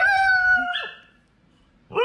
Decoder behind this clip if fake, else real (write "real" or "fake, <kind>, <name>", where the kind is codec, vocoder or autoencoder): fake, vocoder, BigVGAN v2